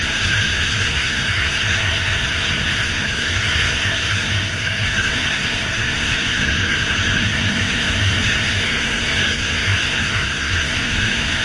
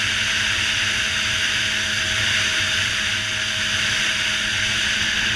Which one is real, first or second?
second